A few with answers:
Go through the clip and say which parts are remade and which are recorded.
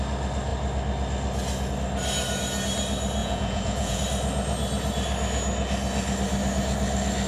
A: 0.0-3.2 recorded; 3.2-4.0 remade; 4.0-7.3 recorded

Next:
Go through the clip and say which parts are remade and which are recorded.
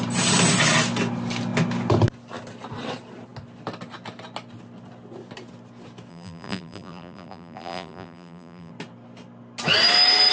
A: 0.0-6.1 recorded; 6.1-8.7 remade; 8.7-10.3 recorded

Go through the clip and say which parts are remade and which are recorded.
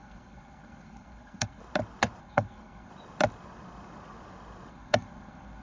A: 0.0-1.6 remade; 1.6-2.2 recorded; 2.2-2.9 remade; 2.9-4.7 recorded; 4.7-5.6 remade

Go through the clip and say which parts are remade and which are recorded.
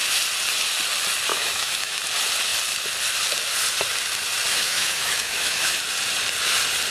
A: 0.0-1.3 recorded; 1.3-2.0 remade; 2.0-4.5 recorded; 4.5-5.8 remade; 5.8-6.9 recorded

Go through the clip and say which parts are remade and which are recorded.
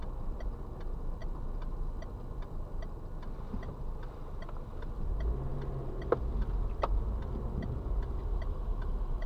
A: 0.0-9.3 recorded